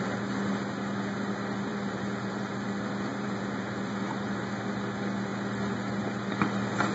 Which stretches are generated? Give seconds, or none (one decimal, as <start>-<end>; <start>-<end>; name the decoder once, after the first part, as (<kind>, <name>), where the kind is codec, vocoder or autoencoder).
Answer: 1.7-2.5 (vocoder, BigVGAN v2); 3.1-4.7